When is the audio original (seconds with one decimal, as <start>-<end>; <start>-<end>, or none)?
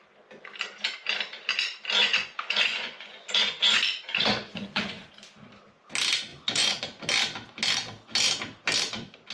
0.0-2.0; 5.1-6.3; 6.8-9.3